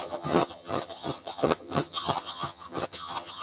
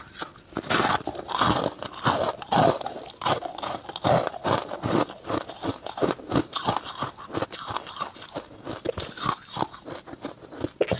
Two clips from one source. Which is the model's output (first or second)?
first